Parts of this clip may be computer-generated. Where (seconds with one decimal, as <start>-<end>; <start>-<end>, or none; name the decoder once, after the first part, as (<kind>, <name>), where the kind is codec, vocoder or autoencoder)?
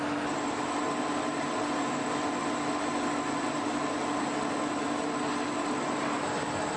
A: none